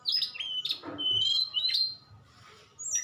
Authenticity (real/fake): real